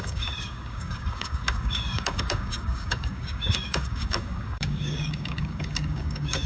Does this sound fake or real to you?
fake